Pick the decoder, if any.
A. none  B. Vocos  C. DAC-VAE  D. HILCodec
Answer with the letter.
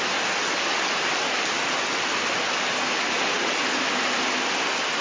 A